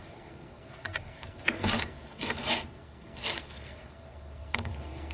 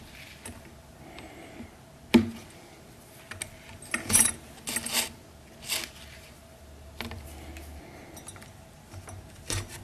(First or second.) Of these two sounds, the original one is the second